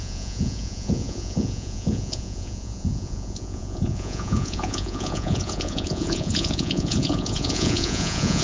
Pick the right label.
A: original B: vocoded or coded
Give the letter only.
B